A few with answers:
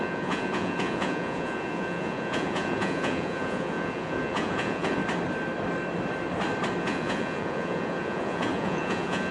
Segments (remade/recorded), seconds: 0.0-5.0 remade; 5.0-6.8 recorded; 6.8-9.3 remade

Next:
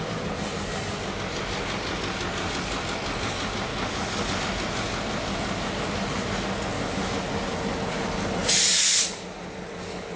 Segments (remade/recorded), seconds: 0.0-3.7 recorded; 3.7-4.4 remade; 4.4-10.2 recorded

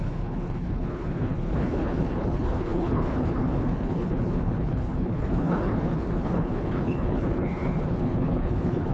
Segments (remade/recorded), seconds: 0.0-8.9 remade

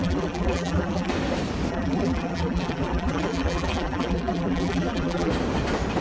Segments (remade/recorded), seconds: 0.0-1.1 remade; 1.1-1.7 recorded; 1.7-5.3 remade; 5.3-6.0 recorded

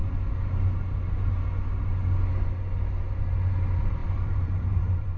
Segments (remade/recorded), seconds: 0.0-4.0 recorded; 4.0-5.2 remade